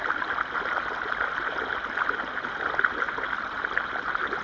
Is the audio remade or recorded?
recorded